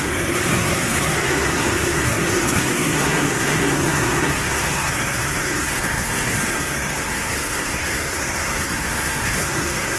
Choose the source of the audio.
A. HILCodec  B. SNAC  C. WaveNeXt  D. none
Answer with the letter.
B